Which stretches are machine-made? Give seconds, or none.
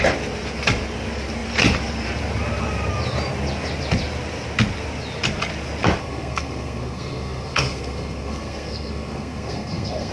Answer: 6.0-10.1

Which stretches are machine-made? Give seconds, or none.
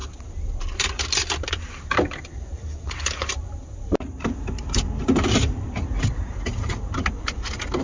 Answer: 0.5-7.8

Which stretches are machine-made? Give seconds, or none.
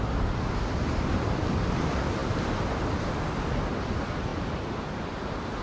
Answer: none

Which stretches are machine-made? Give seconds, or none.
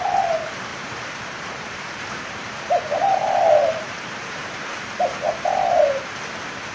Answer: 0.7-2.8; 3.2-4.6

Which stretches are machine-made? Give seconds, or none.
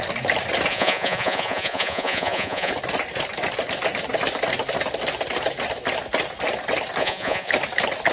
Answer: 0.7-2.7; 7.0-7.5